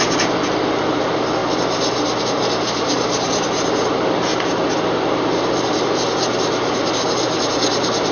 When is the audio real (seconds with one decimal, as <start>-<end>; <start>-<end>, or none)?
1.4-2.2; 4.3-5.7